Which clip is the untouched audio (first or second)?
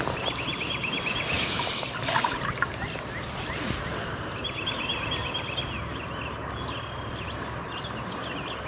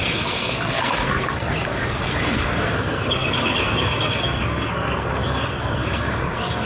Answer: first